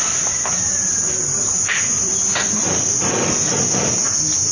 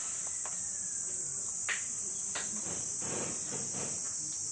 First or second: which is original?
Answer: first